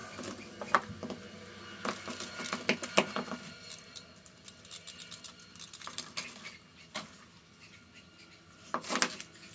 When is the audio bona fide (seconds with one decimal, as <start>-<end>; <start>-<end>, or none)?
0.0-9.5